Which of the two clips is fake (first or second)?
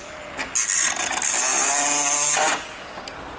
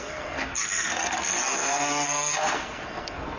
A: second